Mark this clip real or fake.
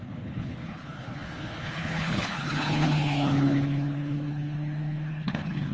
fake